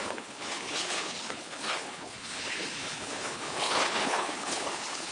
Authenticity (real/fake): fake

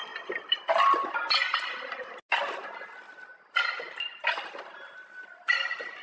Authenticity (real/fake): real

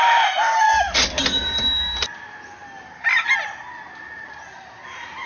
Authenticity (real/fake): real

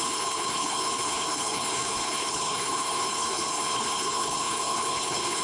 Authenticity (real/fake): fake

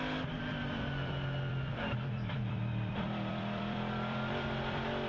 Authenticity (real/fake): fake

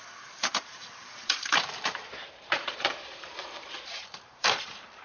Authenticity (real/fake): fake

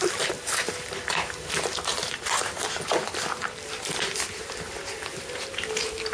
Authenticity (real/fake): real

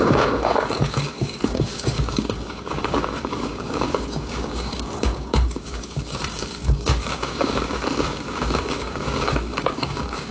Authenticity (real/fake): fake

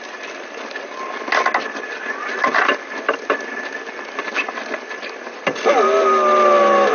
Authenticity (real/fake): real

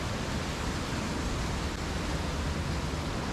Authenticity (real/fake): real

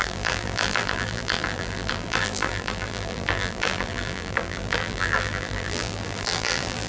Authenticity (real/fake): fake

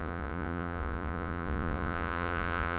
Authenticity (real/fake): fake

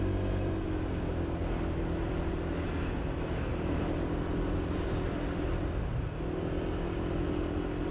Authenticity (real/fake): real